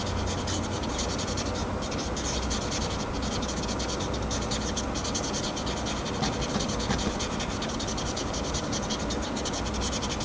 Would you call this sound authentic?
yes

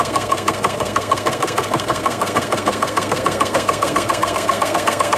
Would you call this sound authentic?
no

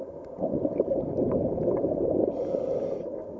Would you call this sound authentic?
yes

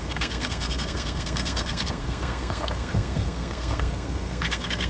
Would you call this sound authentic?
no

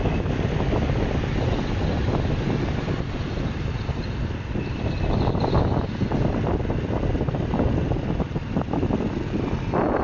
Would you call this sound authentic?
yes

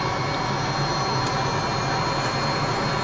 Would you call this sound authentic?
yes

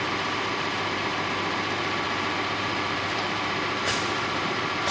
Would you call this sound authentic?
no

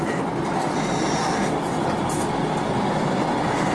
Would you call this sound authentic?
yes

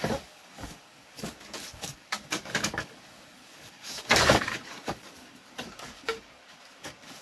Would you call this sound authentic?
no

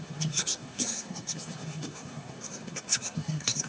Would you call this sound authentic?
no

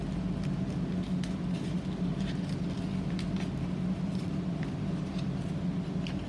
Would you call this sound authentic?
yes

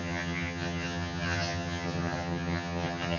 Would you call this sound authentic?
no